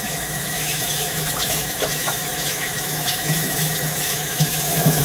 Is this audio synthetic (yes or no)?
yes